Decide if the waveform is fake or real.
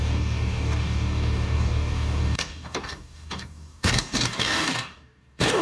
fake